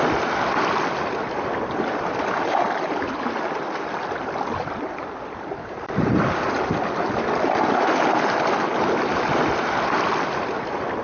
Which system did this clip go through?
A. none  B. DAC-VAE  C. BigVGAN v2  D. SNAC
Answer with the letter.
A